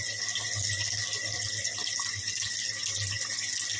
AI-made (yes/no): no